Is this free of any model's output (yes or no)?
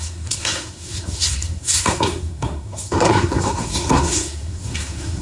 no